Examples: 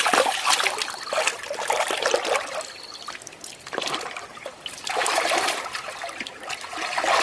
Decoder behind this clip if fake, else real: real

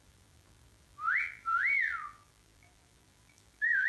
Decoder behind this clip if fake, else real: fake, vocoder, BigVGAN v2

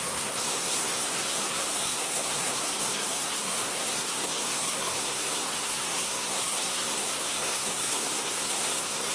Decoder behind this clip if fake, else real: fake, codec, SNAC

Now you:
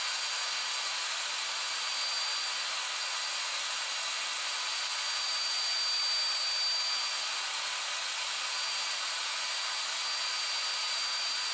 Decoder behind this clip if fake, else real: real